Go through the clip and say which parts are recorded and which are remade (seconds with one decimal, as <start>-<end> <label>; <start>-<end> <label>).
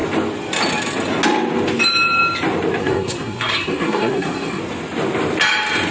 0.0-2.8 recorded; 2.8-4.6 remade; 4.6-5.9 recorded